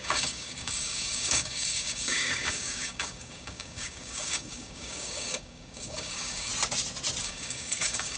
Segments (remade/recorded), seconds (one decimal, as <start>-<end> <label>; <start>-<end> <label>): 0.0-6.5 remade; 6.5-7.2 recorded; 7.2-8.2 remade